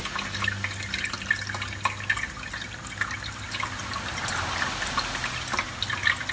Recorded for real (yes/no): yes